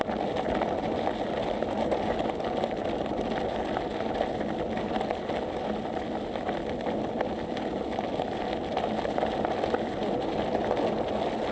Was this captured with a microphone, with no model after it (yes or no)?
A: yes